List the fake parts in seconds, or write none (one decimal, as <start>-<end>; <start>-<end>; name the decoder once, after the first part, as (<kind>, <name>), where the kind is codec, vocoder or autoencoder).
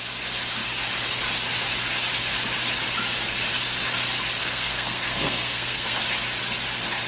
4.4-6.0 (codec, SNAC)